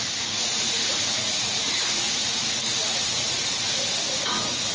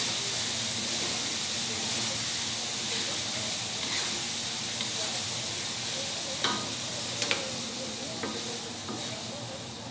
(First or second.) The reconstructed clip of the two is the first